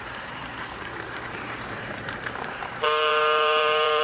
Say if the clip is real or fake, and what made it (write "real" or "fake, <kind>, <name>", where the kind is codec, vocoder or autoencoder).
fake, vocoder, BigVGAN v2